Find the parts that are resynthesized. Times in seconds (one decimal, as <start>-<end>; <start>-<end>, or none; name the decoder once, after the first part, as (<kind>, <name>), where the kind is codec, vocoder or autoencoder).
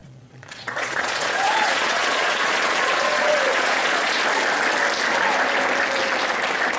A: 0.0-4.1 (vocoder, Vocos)